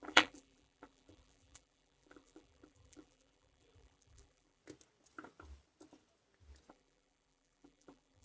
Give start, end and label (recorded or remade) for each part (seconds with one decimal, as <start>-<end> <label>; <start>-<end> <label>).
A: 0.0-4.6 remade; 4.6-6.7 recorded; 6.7-8.2 remade